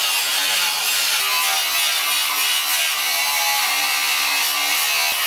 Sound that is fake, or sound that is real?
real